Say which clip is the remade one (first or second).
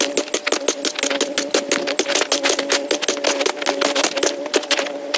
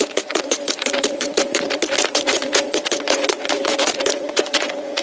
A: second